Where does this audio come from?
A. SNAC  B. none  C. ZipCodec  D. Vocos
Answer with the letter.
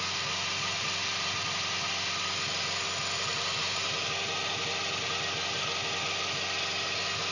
B